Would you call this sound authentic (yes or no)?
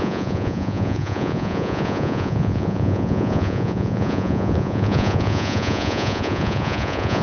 no